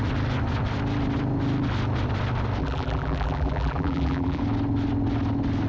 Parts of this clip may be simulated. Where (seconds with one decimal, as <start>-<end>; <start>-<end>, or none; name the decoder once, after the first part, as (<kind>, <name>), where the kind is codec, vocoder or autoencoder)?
2.6-4.4 (vocoder, BigVGAN v2)